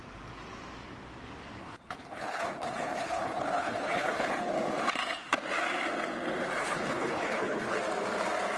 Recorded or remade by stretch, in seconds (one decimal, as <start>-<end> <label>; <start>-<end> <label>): 0.0-1.6 recorded; 1.6-4.5 remade; 4.5-6.6 recorded; 6.6-7.7 remade; 7.7-8.6 recorded